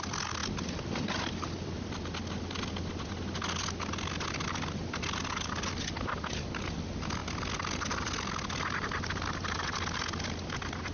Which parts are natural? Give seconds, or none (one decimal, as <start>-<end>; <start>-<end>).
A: 0.0-10.9